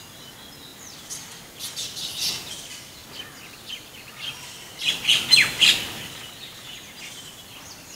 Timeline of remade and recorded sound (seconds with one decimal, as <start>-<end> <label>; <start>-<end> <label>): 0.0-8.0 recorded